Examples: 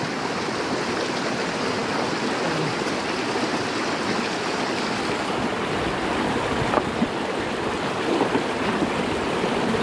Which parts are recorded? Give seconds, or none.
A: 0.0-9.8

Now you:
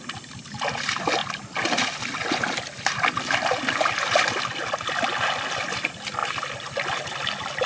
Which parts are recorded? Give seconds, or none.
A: 0.0-7.7